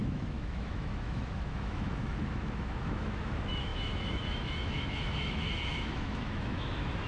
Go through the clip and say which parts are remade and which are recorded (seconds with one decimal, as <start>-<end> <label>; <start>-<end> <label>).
0.0-7.1 remade